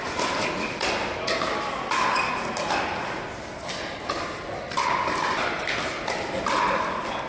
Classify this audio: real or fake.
real